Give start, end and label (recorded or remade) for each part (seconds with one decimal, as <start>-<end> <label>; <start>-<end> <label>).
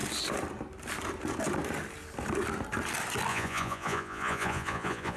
0.0-3.3 recorded; 3.3-5.2 remade